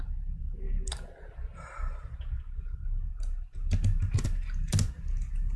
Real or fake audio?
real